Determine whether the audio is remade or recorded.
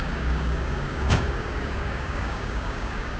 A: remade